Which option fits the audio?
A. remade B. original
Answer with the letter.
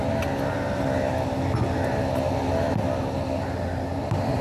B